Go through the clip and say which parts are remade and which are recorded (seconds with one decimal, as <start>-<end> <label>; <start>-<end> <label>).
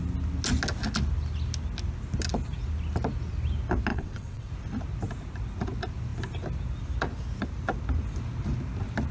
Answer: 0.0-3.9 recorded; 3.9-4.5 remade; 4.5-9.1 recorded